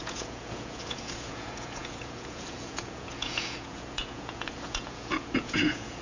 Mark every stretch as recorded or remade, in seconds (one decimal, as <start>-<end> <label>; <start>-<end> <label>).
0.0-6.0 remade